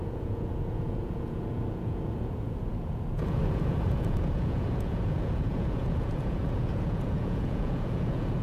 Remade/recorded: remade